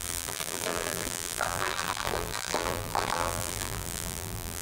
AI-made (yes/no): yes